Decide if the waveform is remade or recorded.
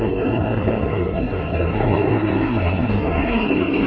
remade